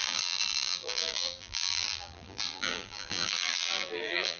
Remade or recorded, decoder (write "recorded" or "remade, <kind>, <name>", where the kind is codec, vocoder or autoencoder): remade, vocoder, BigVGAN v2